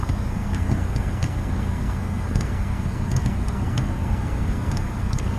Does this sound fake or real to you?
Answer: fake